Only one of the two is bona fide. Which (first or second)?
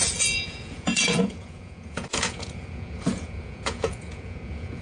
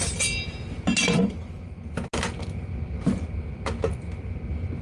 second